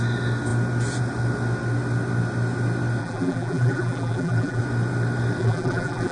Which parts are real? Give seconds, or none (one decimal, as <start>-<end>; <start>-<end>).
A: 0.0-3.0; 4.6-5.4